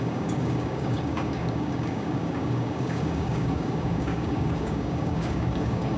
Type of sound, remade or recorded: remade